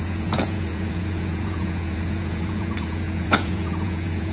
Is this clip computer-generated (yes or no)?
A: yes